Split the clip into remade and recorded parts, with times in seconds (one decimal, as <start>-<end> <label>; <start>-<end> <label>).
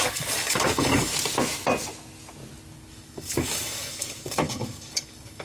0.0-1.1 remade; 1.1-2.9 recorded; 2.9-5.4 remade